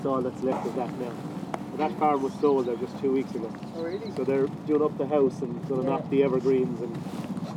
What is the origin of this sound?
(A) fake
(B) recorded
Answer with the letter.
B